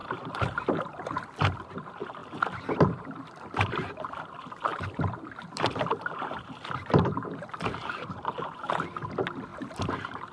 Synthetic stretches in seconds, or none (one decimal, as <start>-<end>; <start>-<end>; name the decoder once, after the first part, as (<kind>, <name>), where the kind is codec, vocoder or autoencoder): 0.0-0.9 (vocoder, BigVGAN v2); 2.2-3.9; 4.7-8.7; 9.5-10.3